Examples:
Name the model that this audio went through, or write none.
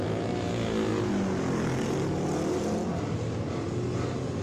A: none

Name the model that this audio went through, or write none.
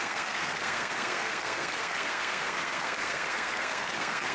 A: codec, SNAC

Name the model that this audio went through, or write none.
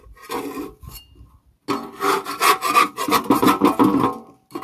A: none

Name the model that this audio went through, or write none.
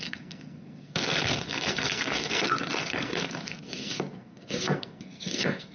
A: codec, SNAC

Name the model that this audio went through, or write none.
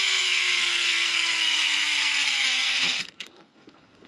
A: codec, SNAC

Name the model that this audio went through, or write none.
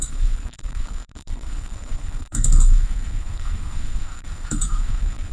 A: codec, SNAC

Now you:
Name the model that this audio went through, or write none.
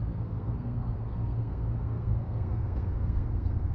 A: codec, SNAC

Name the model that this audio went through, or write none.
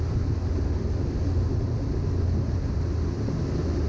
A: none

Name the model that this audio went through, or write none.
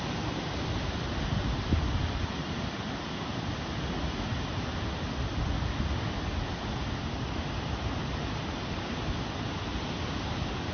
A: none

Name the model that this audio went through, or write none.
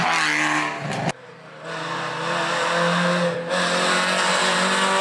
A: none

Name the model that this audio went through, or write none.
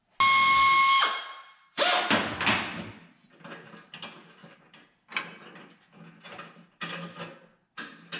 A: none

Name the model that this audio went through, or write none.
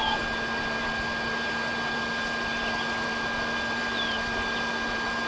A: none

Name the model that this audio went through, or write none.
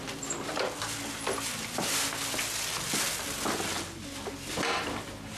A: none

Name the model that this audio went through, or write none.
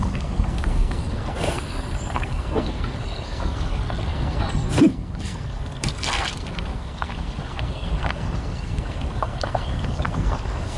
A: codec, SNAC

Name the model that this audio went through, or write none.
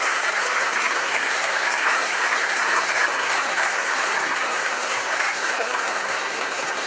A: codec, SNAC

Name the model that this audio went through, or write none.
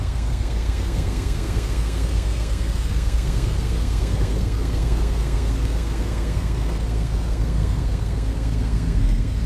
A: codec, SNAC